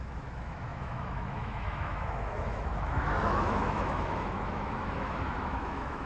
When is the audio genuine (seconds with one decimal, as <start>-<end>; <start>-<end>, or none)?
none